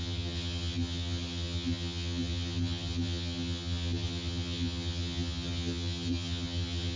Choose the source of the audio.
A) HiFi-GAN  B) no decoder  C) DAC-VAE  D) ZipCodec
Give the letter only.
A